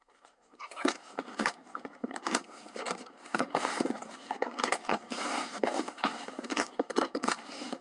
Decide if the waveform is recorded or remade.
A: remade